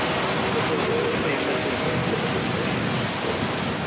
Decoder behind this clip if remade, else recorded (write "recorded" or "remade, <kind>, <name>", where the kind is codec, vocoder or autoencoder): recorded